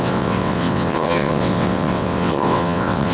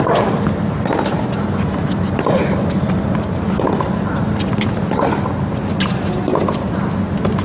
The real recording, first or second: second